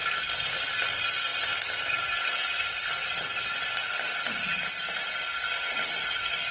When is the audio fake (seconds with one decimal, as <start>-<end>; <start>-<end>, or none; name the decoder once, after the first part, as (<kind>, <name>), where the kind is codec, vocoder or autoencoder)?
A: 1.3-5.2 (vocoder, BigVGAN v2)